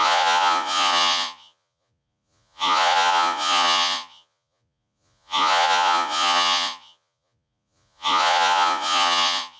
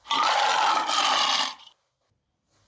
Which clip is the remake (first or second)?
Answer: first